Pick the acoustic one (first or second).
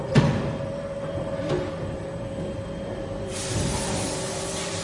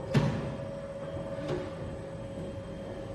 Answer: second